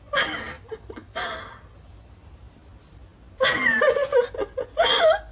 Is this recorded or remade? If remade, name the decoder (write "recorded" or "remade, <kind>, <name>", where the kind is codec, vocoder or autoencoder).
recorded